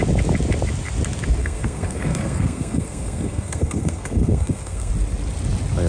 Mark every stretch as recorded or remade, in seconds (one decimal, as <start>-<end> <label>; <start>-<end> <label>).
0.0-1.4 recorded; 1.4-4.9 remade; 4.9-5.9 recorded